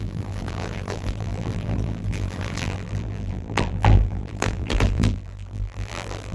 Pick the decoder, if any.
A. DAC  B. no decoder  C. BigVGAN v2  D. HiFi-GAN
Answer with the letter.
C